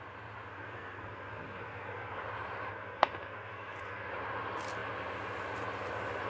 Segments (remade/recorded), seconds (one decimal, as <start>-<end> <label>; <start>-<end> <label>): 0.0-0.5 recorded; 0.5-2.2 remade; 2.2-2.7 recorded; 2.7-4.1 remade; 4.1-6.3 recorded